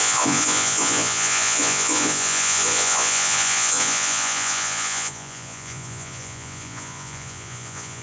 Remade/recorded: remade